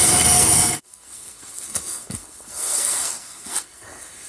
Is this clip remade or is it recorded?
remade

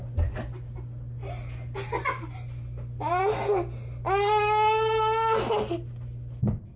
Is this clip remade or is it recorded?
recorded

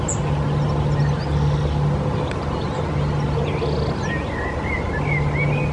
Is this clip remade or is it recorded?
recorded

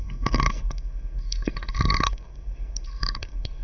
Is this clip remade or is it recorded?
remade